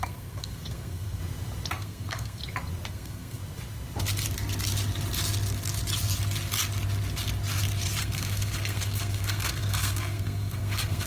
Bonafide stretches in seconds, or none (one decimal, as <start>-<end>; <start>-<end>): 1.2-1.7; 2.4-2.9; 3.4-8.0